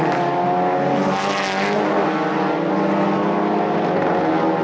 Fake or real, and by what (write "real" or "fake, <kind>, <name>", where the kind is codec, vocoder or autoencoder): real